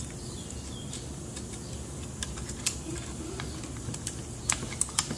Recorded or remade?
recorded